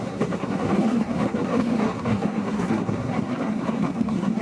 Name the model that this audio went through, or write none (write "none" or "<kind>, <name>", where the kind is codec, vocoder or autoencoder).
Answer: codec, SNAC